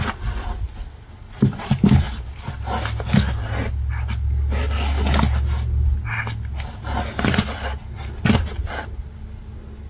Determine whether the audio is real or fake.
real